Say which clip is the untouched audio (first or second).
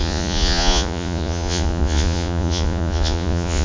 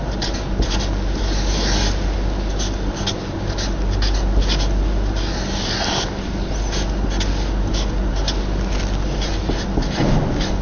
second